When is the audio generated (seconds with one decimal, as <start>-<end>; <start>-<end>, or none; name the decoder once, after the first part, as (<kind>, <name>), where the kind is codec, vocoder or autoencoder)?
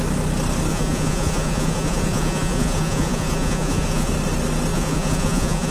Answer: 0.7-4.1 (vocoder, Vocos); 4.7-5.7